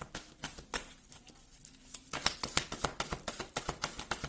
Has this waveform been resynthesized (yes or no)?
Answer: no